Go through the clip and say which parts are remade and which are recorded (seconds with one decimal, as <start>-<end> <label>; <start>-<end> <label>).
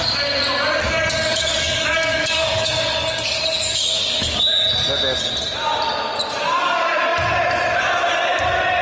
0.0-0.8 recorded; 0.8-4.4 remade; 4.4-8.8 recorded